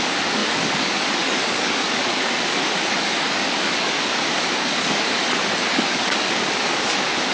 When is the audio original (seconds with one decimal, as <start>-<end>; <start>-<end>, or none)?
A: 5.2-5.7